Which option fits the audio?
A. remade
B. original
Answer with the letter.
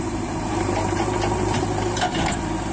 A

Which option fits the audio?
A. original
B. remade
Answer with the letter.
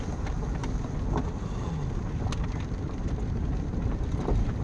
A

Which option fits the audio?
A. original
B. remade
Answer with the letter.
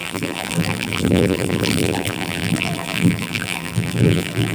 B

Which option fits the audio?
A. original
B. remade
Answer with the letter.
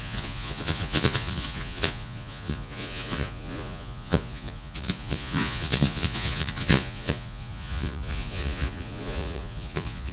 B